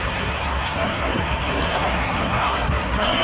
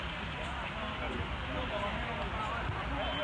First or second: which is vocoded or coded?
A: first